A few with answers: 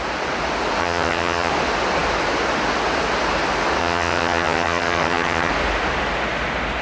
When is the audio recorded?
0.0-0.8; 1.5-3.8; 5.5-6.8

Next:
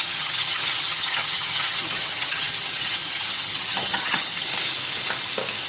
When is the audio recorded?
4.5-5.7

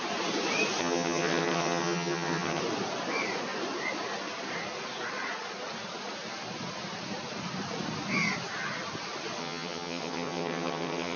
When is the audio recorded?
0.0-0.8; 2.6-9.4

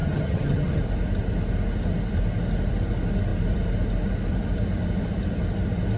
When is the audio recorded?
0.8-6.0